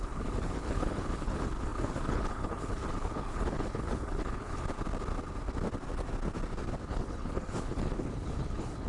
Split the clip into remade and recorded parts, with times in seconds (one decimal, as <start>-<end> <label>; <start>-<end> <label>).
0.0-4.6 remade; 4.6-6.9 recorded; 6.9-8.9 remade